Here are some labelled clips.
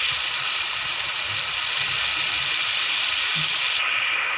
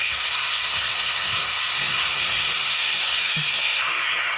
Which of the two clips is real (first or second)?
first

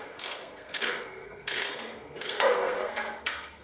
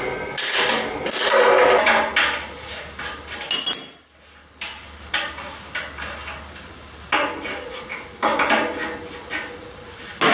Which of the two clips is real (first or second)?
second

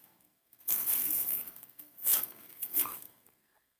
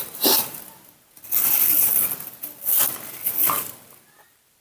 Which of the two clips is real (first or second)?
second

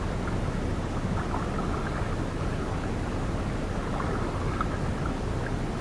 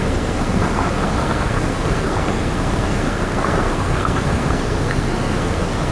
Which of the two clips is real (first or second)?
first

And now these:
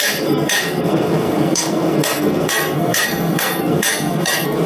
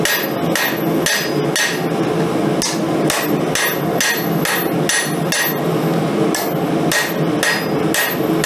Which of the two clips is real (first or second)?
second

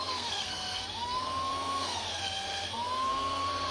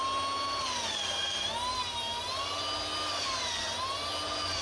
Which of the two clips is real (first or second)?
second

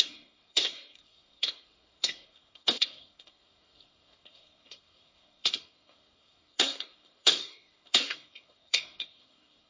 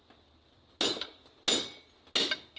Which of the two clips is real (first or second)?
second